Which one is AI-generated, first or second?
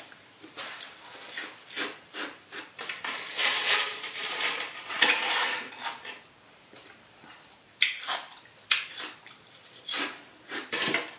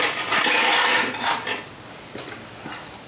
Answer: first